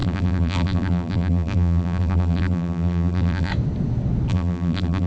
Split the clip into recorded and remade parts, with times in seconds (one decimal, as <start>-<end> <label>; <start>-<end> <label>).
0.0-3.5 remade; 3.5-4.3 recorded; 4.3-5.1 remade